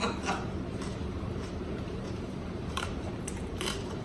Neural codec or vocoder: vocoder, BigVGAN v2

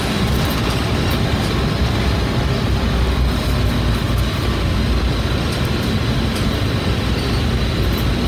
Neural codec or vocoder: none